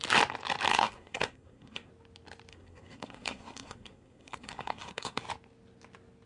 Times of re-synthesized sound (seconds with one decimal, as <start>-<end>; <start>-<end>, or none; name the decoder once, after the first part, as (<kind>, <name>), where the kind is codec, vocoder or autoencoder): 0.7-1.9 (codec, SNAC); 2.5-5.2